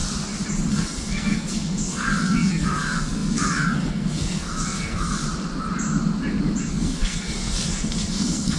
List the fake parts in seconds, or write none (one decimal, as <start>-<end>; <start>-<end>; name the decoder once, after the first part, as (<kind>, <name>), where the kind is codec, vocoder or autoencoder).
0.7-5.2 (codec, SNAC); 6.6-8.6